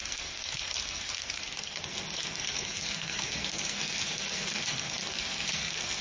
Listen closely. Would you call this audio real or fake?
fake